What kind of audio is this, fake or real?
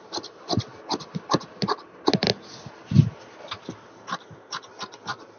real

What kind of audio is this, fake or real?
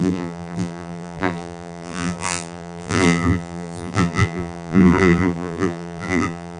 fake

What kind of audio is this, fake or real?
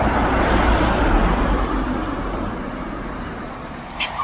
fake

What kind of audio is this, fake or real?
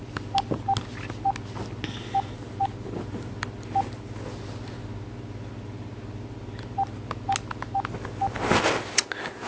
real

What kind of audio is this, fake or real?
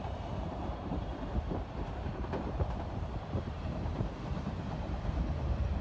fake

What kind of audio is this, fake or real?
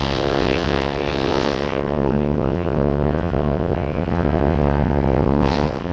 fake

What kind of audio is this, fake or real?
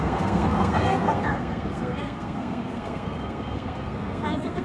fake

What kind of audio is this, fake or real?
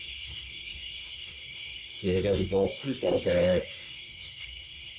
fake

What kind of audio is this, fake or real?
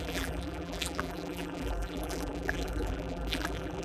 fake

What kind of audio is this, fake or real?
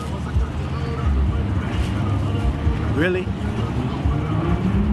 real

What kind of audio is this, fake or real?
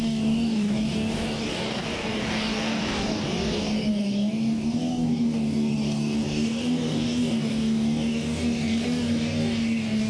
fake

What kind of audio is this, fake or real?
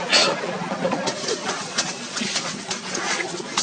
fake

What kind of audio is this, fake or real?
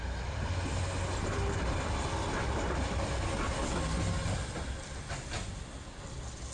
real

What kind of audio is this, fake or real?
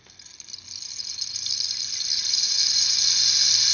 real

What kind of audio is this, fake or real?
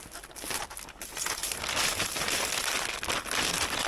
real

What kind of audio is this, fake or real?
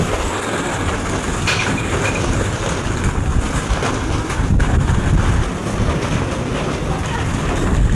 real